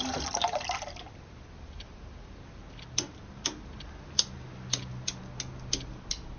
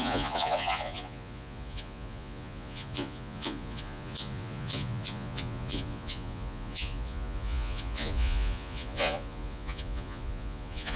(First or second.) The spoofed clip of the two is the second